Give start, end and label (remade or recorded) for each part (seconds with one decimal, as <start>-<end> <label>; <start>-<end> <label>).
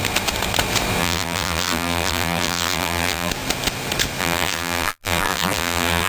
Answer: 0.0-1.0 recorded; 1.0-3.3 remade; 3.3-4.2 recorded; 4.2-6.1 remade